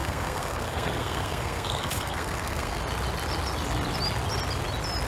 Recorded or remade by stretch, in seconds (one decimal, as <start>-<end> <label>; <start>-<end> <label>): 0.0-2.8 remade; 2.8-5.1 recorded